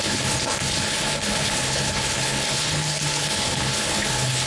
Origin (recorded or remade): remade